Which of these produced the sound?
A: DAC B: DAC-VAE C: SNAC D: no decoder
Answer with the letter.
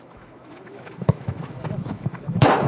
B